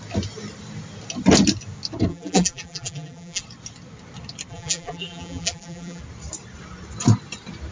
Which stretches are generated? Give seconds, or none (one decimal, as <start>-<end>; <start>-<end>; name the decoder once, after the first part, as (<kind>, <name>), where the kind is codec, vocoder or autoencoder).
2.1-3.4 (vocoder, BigVGAN v2); 4.5-6.0